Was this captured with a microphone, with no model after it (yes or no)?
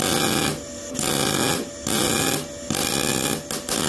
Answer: yes